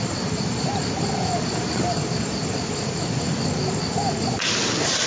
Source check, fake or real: real